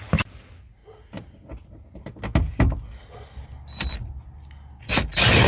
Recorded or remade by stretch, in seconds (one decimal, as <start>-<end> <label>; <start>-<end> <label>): 0.0-5.5 recorded